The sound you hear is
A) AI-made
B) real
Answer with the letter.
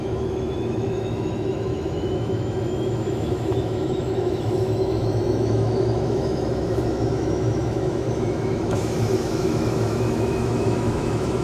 A